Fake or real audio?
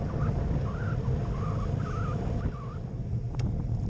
real